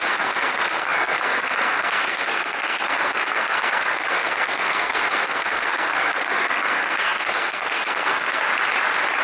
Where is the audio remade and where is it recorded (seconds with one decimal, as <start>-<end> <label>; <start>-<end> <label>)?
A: 0.0-8.5 remade; 8.5-9.2 recorded